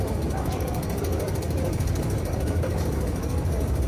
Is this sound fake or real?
fake